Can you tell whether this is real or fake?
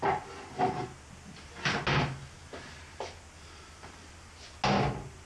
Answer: real